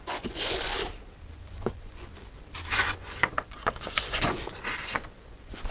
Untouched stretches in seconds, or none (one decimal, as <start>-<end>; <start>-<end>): 0.7-1.3; 2.1-2.7